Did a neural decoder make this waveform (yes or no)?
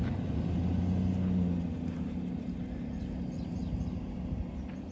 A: no